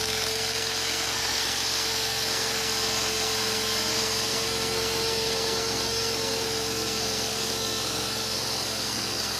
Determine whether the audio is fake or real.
fake